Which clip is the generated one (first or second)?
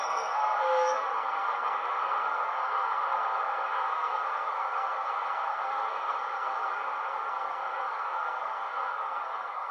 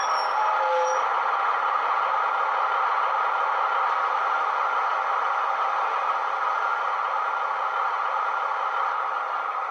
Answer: first